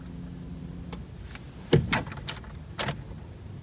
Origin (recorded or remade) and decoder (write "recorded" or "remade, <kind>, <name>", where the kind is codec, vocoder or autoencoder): recorded